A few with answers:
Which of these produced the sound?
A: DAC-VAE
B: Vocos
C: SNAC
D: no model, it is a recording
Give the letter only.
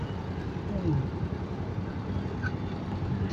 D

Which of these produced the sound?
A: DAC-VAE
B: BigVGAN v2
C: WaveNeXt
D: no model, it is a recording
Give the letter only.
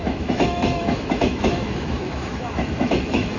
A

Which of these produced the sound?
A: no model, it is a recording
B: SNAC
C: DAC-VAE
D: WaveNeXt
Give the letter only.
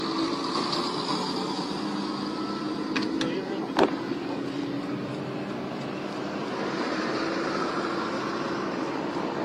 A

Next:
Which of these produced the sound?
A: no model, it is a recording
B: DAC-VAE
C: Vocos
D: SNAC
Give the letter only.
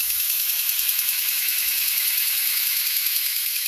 B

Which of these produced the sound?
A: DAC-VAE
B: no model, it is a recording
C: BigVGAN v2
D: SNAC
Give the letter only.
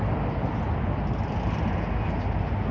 B